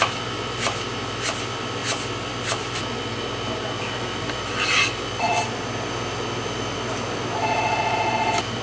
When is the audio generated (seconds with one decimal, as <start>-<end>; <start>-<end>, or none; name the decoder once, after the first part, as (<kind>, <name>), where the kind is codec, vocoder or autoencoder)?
none